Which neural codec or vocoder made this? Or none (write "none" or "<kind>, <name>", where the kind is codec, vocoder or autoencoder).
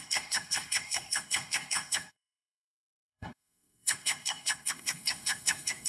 codec, SNAC